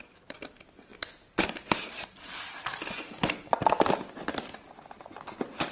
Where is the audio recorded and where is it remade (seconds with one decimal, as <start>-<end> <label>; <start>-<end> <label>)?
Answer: 0.0-5.7 recorded